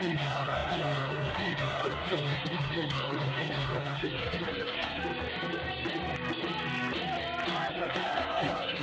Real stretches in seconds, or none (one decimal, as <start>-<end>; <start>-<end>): 5.0-7.7